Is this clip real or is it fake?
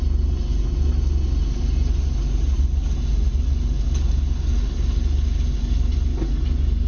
real